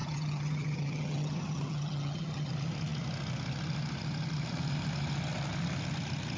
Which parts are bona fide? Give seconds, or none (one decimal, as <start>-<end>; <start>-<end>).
2.5-6.4